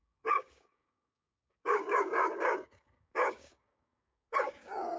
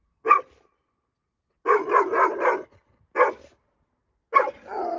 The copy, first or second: first